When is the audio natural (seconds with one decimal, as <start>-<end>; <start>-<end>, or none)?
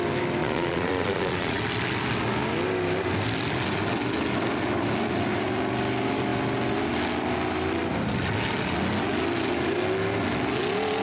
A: 0.0-0.4; 1.6-11.0